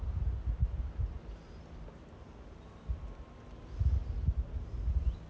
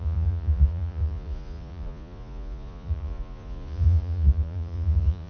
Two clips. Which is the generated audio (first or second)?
second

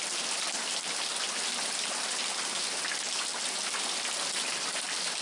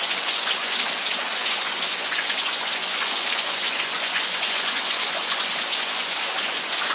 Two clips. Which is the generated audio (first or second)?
second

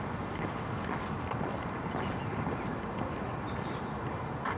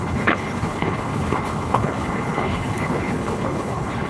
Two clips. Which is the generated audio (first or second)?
second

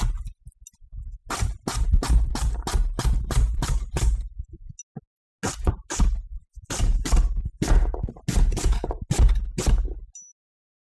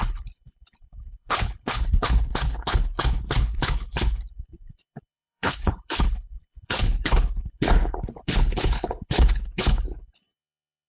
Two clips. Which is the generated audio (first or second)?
second